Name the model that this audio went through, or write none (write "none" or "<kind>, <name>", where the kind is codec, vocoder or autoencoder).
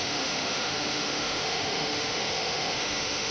autoencoder, DAC-VAE